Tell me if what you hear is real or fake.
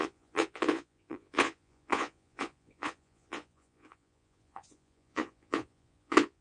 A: fake